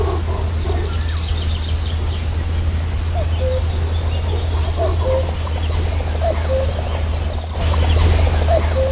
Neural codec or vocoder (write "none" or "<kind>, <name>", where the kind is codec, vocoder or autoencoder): none